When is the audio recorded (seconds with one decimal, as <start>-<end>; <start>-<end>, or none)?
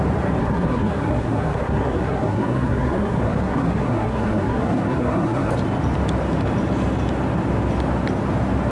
0.0-0.4; 5.5-8.7